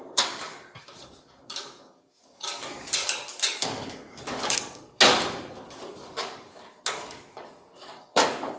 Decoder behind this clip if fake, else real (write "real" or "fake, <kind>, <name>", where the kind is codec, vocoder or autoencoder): fake, codec, DAC